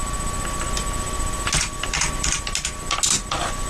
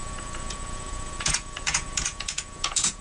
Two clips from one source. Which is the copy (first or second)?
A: second